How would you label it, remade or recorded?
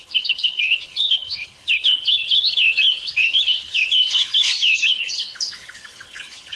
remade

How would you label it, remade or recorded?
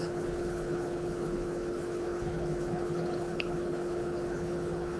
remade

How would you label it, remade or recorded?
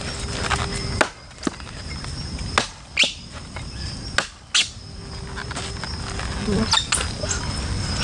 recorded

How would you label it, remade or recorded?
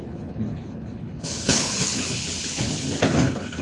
remade